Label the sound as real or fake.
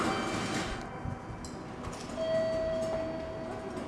real